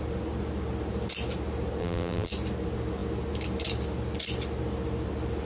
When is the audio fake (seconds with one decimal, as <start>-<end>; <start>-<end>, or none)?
1.8-2.3